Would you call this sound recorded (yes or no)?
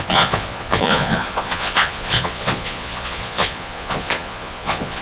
no